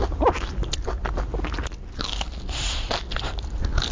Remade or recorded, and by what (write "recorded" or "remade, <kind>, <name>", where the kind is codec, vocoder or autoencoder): recorded